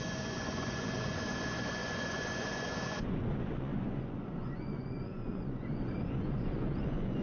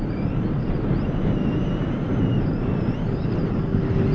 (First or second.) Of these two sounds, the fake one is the first